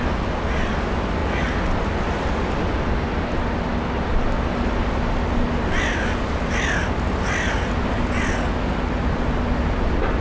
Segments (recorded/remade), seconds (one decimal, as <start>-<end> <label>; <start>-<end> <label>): 0.0-10.2 recorded